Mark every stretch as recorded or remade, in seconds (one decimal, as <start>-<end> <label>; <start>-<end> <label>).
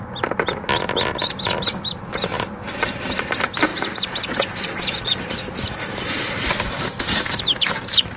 0.0-3.7 recorded; 3.7-6.8 remade; 6.8-8.2 recorded